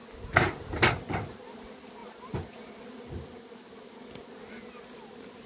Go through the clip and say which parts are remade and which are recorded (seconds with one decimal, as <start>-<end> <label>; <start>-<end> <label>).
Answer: 0.0-5.5 recorded